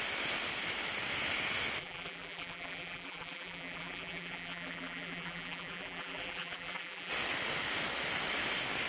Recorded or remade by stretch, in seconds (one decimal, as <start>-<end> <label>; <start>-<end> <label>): 0.0-1.8 recorded; 1.8-7.1 remade; 7.1-8.9 recorded